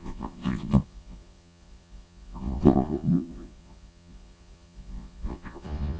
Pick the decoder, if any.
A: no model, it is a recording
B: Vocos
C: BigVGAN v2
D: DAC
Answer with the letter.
B